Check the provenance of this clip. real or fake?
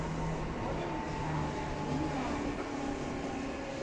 real